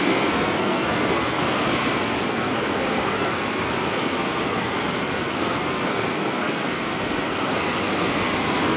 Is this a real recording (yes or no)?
no